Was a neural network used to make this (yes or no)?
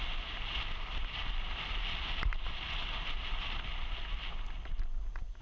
no